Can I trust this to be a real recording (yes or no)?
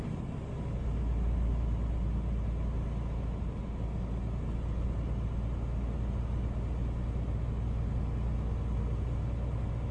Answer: yes